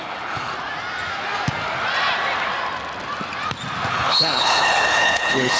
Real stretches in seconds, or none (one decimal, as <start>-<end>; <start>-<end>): 0.5-3.9